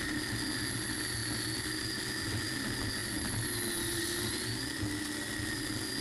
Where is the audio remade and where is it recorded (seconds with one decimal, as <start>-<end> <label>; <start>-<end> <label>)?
0.0-6.0 recorded